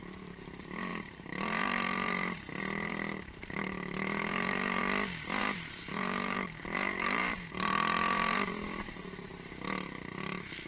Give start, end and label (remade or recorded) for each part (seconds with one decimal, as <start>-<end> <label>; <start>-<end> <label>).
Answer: 0.0-4.8 remade; 4.8-5.4 recorded; 5.4-9.3 remade; 9.3-10.2 recorded; 10.2-10.7 remade